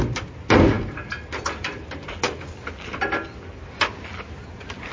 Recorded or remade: recorded